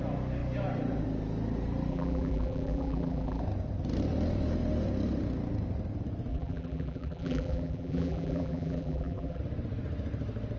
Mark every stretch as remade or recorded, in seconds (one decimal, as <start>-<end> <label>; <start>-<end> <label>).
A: 0.0-1.9 recorded; 1.9-3.4 remade; 3.4-6.3 recorded; 6.3-9.4 remade; 9.4-10.6 recorded